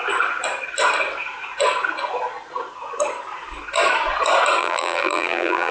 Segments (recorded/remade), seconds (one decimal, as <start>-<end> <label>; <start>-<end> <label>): 0.0-4.6 recorded; 4.6-5.7 remade